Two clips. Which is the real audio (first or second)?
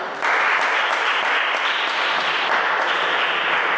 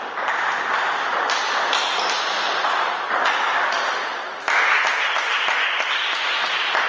second